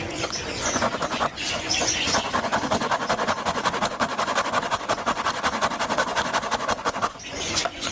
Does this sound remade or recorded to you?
remade